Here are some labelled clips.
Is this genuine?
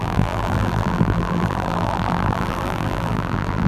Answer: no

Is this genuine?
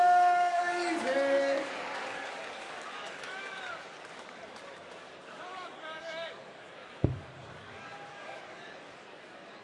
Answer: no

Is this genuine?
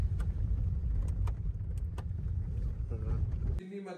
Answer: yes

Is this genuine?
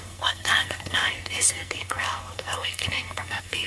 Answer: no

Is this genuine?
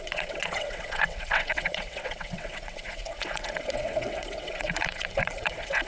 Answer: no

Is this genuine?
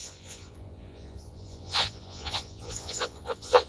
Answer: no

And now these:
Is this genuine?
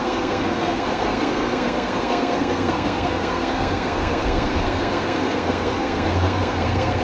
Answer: no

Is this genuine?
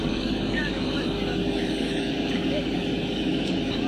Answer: no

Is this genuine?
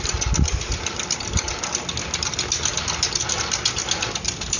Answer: yes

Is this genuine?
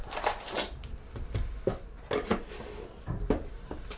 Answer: yes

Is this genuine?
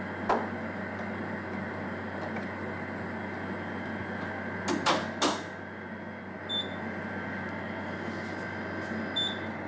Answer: yes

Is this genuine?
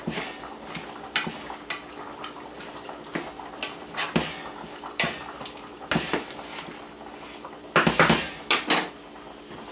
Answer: yes